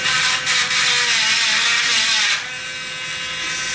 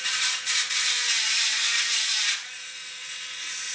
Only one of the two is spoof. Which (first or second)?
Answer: second